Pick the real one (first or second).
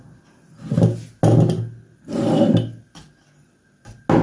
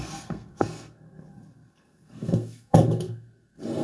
first